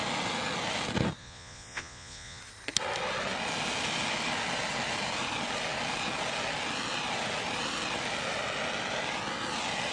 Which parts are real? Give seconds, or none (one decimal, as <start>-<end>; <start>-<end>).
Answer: 0.0-1.2; 2.4-9.9